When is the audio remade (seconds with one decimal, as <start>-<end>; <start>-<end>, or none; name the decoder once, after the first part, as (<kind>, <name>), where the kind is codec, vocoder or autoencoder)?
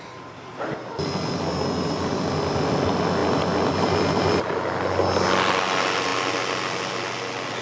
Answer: none